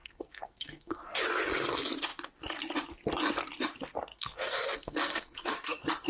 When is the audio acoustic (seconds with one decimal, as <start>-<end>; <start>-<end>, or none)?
1.2-4.1